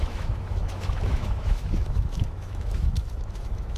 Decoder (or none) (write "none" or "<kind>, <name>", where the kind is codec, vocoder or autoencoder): autoencoder, DAC-VAE